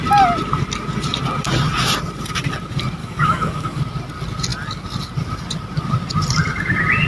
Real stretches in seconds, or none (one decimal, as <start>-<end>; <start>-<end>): 0.0-3.0; 3.8-7.1

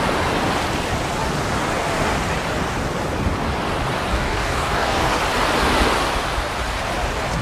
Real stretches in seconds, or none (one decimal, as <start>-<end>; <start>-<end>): 0.0-4.1; 5.1-7.4

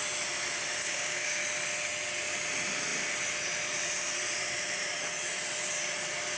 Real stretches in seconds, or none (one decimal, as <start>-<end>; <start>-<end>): 0.0-0.8; 1.4-6.4

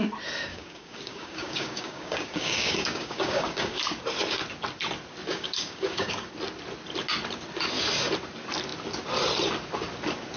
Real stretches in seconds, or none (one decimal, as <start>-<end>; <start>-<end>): 0.0-0.5; 3.8-5.3; 6.3-10.4

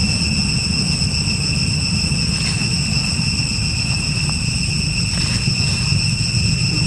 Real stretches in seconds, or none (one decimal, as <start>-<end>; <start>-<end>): 0.0-6.9

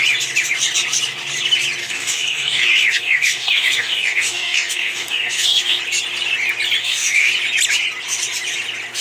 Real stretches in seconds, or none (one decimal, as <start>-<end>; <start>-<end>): 0.0-1.8; 5.8-6.8; 7.3-9.0

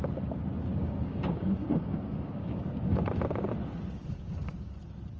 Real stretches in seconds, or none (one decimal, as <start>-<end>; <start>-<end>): 0.0-0.7; 3.0-4.0; 4.8-5.2